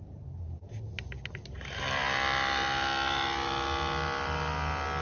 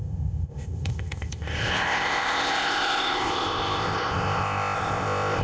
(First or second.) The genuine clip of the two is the first